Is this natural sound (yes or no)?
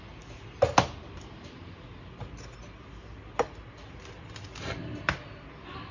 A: yes